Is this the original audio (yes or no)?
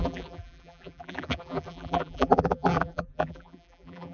no